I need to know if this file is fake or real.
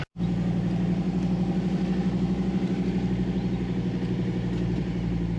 real